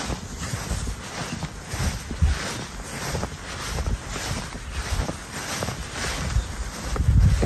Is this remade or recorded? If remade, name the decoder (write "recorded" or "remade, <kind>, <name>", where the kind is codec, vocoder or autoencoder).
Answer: recorded